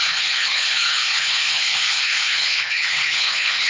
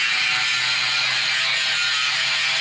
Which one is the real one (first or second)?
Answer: second